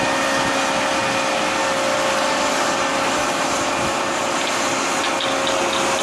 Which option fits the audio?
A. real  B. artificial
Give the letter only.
A